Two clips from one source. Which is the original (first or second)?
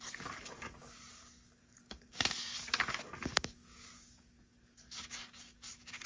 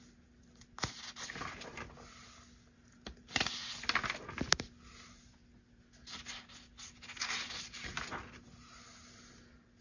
second